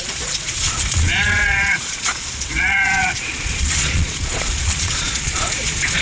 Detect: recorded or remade remade